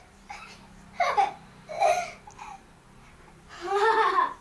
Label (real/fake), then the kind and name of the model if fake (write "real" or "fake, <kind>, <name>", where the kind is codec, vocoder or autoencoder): real